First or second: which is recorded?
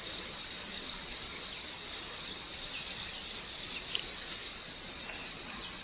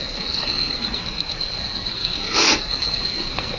first